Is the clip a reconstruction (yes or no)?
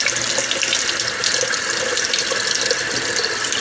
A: no